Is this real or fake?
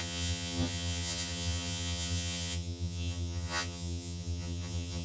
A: fake